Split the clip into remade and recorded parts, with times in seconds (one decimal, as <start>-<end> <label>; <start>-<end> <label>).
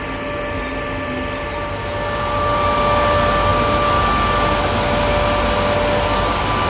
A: 0.0-6.7 recorded